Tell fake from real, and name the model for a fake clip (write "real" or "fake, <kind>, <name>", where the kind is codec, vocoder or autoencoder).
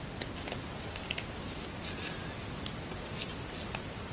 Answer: real